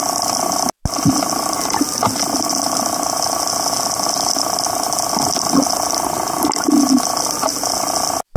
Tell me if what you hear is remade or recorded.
recorded